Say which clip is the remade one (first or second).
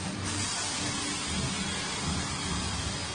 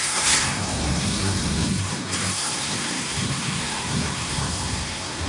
second